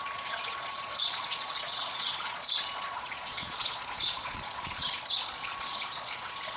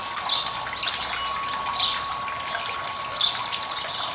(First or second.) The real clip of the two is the second